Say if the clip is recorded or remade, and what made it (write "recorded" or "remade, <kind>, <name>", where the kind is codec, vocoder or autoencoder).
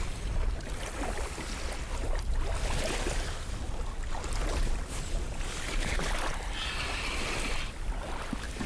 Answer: recorded